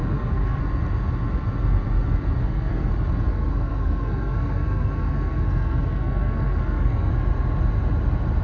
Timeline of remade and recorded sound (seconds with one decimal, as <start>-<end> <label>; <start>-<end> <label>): 0.0-0.6 remade; 0.6-2.4 recorded; 2.4-2.9 remade; 2.9-3.3 recorded; 3.3-7.1 remade; 7.1-8.4 recorded